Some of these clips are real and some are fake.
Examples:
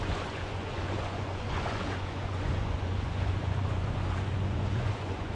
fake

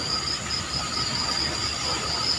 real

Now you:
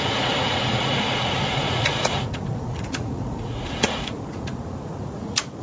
fake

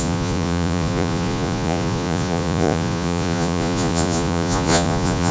fake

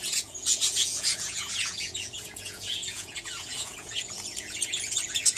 fake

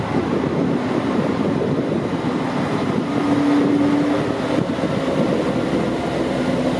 real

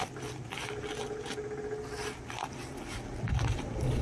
real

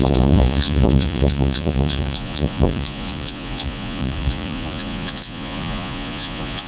fake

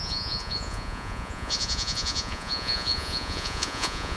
fake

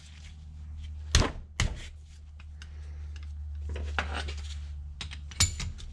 real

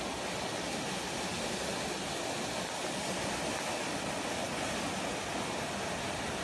real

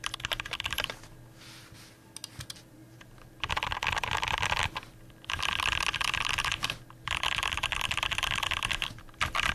real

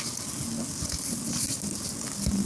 real